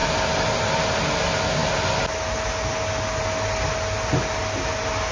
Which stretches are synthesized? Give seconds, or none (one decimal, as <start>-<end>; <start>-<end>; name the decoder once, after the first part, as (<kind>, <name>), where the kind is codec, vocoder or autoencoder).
none